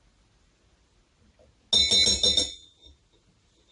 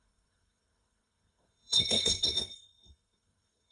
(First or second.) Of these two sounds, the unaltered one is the first